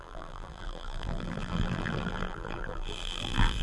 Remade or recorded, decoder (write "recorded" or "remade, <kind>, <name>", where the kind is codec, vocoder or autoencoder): remade, vocoder, BigVGAN v2